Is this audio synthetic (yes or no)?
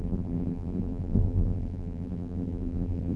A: yes